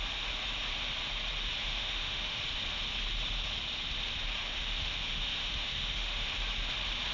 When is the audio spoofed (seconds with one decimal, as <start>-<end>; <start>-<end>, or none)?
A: 1.6-2.4; 4.5-6.3